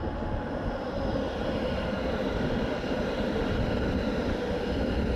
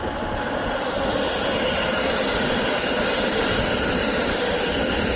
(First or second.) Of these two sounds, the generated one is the second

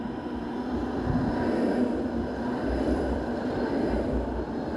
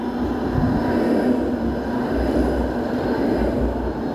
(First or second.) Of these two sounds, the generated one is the first